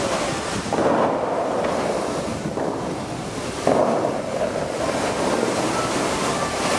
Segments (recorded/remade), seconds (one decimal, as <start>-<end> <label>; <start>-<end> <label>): 0.0-2.3 recorded; 2.3-4.4 remade; 4.4-6.8 recorded